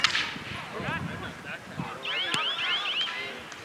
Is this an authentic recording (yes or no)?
yes